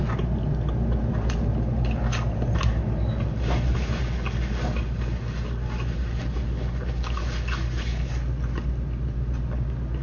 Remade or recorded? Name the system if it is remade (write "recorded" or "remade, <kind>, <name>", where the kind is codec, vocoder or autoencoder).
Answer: recorded